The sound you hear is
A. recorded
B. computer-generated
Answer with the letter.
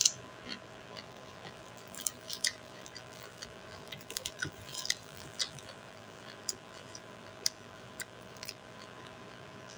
B